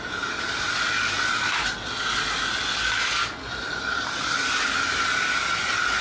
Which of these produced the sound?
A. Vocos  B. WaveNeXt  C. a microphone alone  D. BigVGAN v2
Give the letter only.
C